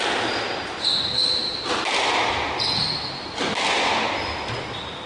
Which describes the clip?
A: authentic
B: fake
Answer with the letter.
A